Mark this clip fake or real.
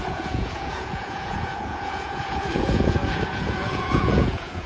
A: fake